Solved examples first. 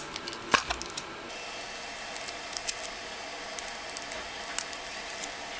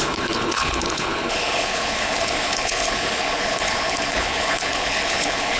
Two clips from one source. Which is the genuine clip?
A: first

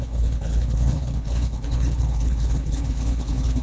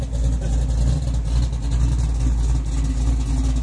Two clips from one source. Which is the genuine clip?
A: second